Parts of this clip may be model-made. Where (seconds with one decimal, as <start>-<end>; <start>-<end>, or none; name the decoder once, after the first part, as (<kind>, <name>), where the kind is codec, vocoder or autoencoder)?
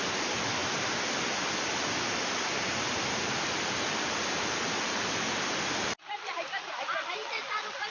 none